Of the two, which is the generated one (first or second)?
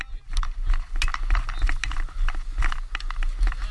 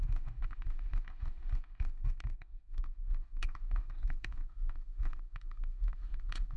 second